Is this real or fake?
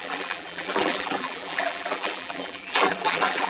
fake